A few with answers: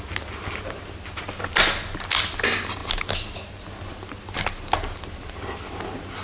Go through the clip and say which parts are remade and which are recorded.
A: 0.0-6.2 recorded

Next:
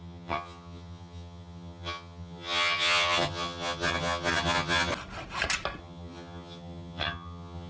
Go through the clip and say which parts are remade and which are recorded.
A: 0.0-4.9 remade; 4.9-5.8 recorded; 5.8-7.7 remade

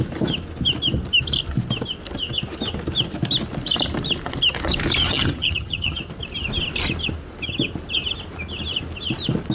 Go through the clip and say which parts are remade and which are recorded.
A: 0.0-5.0 recorded; 5.0-6.0 remade; 6.0-9.5 recorded

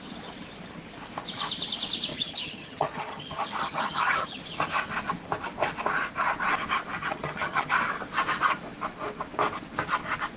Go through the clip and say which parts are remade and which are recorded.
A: 0.0-2.1 recorded; 2.1-4.4 remade; 4.4-7.0 recorded; 7.0-7.7 remade; 7.7-10.4 recorded

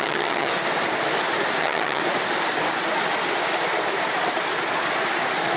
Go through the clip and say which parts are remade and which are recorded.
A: 0.0-0.5 remade; 0.5-1.6 recorded; 1.6-2.0 remade; 2.0-5.6 recorded